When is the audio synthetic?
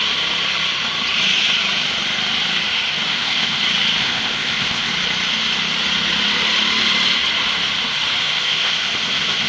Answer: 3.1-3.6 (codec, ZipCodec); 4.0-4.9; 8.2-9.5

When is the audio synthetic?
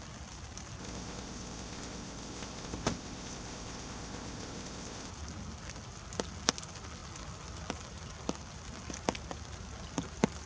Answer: 0.8-5.1 (codec, ZipCodec)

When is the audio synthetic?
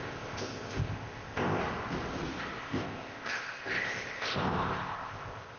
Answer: 0.0-1.6 (codec, ZipCodec); 2.6-5.6